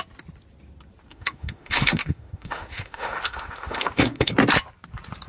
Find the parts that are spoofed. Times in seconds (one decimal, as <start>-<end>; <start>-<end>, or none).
1.1-4.3

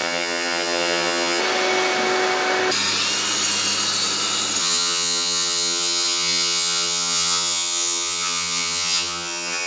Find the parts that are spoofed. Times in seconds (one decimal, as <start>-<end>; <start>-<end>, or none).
0.0-1.4; 4.6-9.7

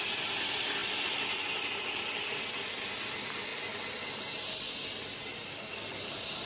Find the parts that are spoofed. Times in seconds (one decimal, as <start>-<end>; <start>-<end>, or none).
none

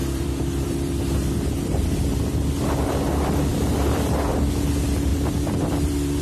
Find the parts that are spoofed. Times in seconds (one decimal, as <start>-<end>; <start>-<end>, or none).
0.0-2.0; 5.1-6.2

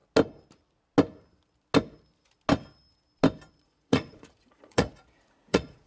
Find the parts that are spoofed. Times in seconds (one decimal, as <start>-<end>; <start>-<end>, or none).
3.5-5.9

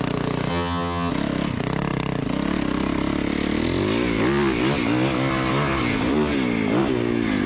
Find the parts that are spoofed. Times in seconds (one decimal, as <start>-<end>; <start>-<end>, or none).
0.5-1.1

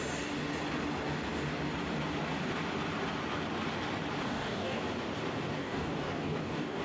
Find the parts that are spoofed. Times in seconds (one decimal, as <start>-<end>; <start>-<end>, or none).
4.2-4.8; 5.6-6.8